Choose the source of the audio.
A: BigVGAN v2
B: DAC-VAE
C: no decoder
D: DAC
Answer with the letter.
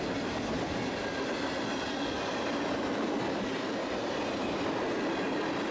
C